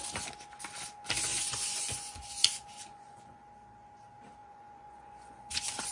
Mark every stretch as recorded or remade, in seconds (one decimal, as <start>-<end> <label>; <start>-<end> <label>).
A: 0.0-1.3 recorded; 1.3-3.4 remade; 3.4-4.4 recorded; 4.4-5.9 remade